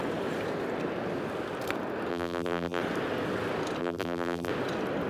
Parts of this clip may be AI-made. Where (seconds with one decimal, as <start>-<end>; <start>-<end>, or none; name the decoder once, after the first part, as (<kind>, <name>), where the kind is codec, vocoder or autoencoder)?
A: 2.1-2.8 (vocoder, BigVGAN v2); 3.8-4.5